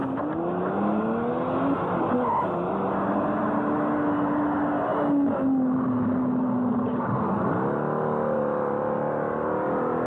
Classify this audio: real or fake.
real